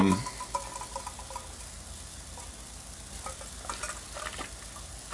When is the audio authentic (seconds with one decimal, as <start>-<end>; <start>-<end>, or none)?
0.0-5.1